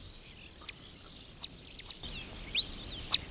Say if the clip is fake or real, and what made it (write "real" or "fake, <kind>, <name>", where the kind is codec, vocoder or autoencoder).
real